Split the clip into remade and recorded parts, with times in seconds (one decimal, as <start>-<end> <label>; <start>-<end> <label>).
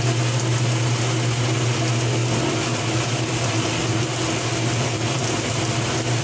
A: 0.0-6.2 recorded